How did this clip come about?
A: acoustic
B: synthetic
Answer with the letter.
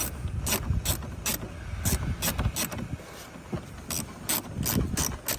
A